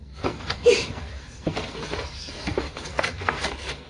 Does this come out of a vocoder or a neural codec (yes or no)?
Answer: yes